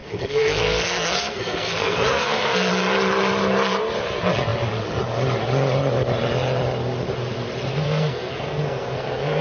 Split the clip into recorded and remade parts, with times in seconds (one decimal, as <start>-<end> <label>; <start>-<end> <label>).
0.0-2.7 remade; 2.7-7.7 recorded; 7.7-9.4 remade